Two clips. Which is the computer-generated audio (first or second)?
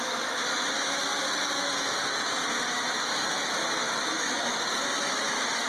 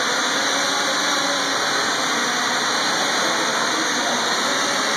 first